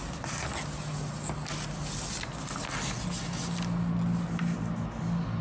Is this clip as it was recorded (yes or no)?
yes